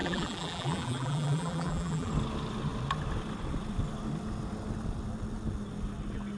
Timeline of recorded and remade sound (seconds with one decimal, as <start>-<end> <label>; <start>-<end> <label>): 0.0-2.1 remade; 2.1-6.4 recorded